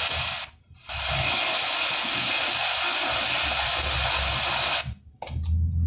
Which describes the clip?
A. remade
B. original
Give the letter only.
B